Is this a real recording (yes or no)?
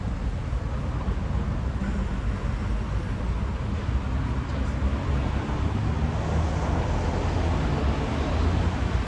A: yes